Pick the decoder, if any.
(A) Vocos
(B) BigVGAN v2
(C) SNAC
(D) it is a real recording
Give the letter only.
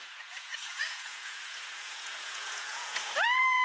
A